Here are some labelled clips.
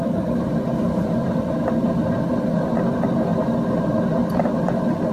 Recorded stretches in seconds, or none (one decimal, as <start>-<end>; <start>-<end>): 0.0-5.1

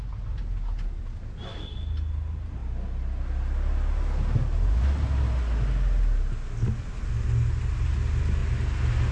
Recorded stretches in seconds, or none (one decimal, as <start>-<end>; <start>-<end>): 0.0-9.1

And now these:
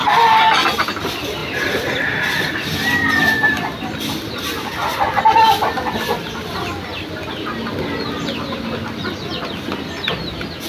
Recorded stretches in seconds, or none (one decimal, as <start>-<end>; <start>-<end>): 0.0-10.7

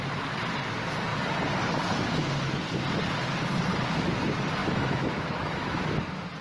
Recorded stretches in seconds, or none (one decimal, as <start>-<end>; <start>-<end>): 0.0-4.6; 6.0-6.4

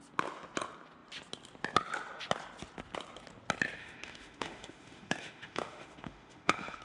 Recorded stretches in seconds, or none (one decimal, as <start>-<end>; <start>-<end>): 0.0-3.8

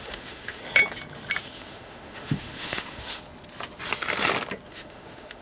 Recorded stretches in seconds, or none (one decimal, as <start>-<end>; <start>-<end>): 0.6-1.4; 3.2-4.7